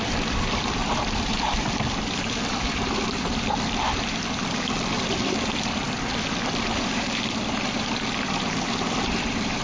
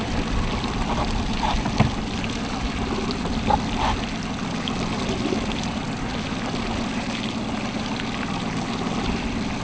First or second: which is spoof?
first